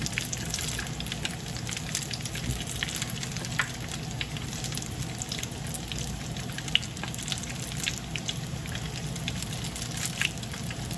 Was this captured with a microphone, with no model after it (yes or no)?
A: yes